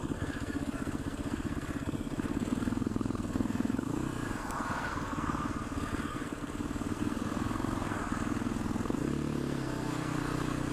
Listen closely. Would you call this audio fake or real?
fake